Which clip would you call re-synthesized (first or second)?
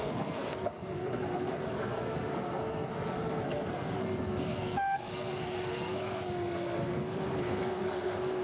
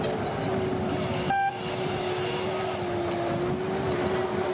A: first